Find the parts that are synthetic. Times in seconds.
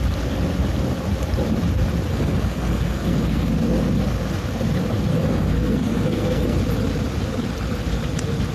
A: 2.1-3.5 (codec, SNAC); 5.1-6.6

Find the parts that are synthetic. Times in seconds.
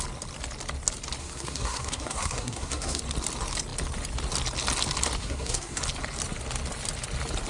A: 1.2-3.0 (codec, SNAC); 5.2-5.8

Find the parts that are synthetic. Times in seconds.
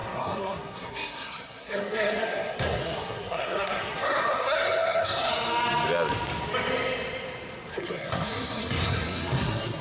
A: 0.0-5.3 (codec, SNAC); 7.7-9.8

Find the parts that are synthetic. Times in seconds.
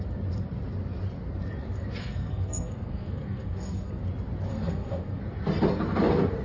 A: 2.0-4.0 (codec, SNAC); 4.5-5.2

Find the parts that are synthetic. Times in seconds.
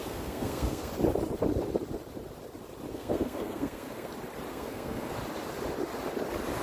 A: 0.0-0.9 (codec, SNAC); 2.9-4.1; 4.5-5.1